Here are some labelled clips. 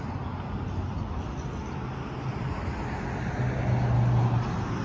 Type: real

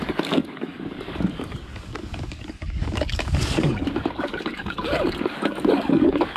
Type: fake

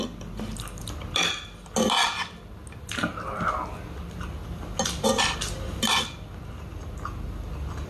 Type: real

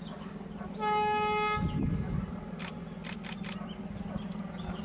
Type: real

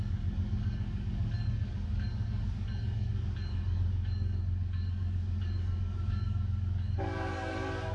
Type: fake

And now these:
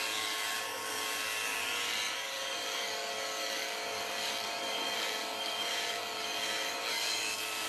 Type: fake